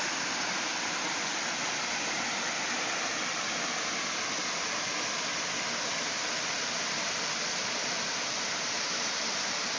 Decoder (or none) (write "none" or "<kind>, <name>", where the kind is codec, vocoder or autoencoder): none